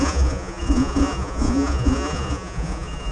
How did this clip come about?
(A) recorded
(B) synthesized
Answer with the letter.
B